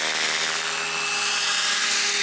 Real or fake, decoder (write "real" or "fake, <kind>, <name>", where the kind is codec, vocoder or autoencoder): real